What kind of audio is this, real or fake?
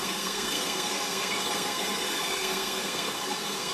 fake